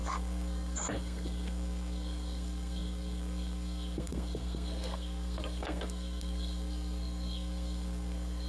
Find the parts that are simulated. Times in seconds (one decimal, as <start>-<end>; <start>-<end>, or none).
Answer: 0.0-8.5